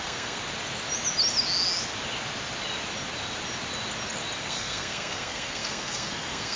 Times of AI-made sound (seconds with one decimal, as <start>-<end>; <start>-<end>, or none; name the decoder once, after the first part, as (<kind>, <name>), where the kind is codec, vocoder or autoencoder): 0.0-0.4 (codec, SNAC); 4.4-6.6